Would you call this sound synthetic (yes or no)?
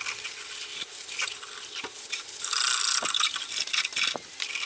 no